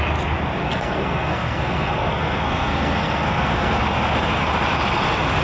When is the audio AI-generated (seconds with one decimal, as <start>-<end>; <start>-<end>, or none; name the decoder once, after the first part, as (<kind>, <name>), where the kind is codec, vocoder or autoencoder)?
0.6-3.8 (codec, SNAC)